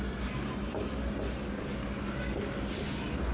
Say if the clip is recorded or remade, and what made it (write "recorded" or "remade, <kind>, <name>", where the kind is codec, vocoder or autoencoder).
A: recorded